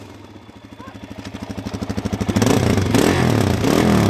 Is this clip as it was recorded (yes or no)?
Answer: yes